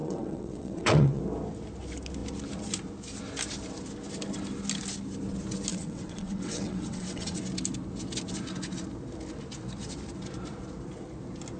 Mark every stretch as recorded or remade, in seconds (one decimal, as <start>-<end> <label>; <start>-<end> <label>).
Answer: 0.0-1.2 remade; 1.2-5.7 recorded; 5.7-7.4 remade; 7.4-11.6 recorded